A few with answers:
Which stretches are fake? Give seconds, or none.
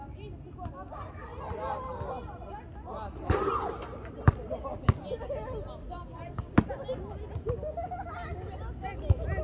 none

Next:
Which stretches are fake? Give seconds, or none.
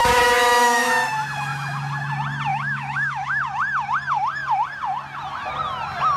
0.0-1.1 (autoencoder, DAC-VAE); 2.5-3.4